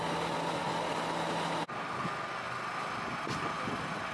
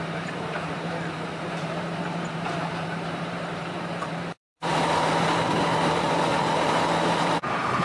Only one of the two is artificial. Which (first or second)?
second